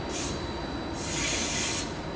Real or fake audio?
real